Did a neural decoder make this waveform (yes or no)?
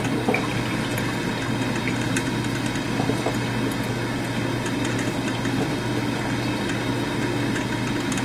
no